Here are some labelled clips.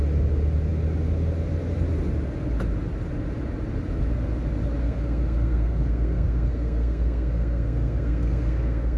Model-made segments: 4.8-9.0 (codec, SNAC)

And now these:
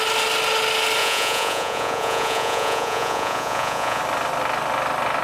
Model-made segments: 1.0-4.0 (vocoder, Vocos)

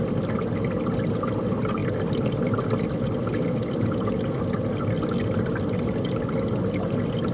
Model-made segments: none

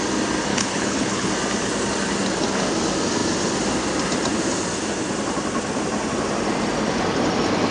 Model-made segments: 0.5-1.3 (codec, HILCodec)

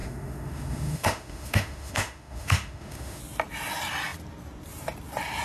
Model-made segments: 0.0-3.2 (autoencoder, DAC-VAE)

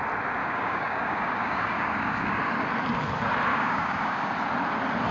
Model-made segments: 0.4-2.4 (codec, DAC); 3.5-4.3